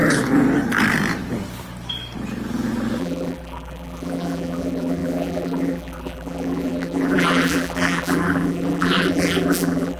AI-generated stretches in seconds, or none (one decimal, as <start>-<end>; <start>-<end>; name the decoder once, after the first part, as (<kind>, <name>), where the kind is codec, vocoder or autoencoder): 3.0-10.0 (vocoder, BigVGAN v2)

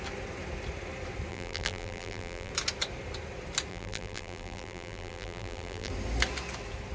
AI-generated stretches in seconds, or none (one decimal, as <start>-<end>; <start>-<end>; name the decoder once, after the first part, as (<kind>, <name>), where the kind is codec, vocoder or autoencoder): 1.3-2.5 (vocoder, BigVGAN v2); 3.7-5.9

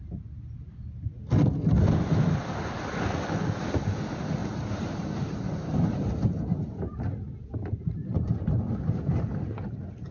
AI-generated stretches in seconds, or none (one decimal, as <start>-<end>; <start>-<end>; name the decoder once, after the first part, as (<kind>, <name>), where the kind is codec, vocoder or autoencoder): 4.4-8.6 (vocoder, BigVGAN v2)

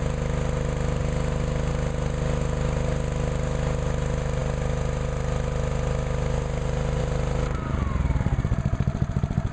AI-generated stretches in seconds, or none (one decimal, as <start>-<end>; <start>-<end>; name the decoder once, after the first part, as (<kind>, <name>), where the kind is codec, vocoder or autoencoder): 1.0-1.7 (vocoder, BigVGAN v2)

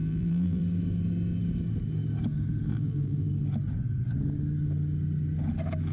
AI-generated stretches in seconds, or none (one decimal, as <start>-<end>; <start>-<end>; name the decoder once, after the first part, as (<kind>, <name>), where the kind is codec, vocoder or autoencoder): 0.0-0.6 (vocoder, BigVGAN v2); 2.7-3.3

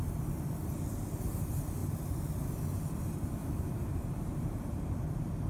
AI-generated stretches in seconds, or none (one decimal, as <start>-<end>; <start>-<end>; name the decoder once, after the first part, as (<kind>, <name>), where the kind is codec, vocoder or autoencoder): 3.4-4.8 (vocoder, BigVGAN v2)

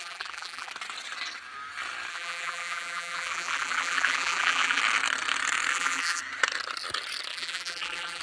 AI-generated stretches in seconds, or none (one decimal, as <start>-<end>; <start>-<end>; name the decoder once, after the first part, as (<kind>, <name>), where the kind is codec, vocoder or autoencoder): 0.0-0.7 (vocoder, BigVGAN v2); 2.1-4.8; 5.7-6.2; 7.3-8.2